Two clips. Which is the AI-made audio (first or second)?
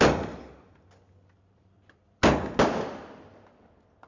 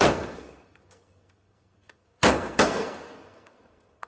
second